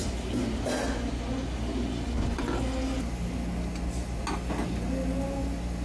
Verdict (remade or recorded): recorded